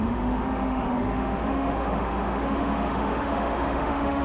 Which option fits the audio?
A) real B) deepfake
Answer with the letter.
B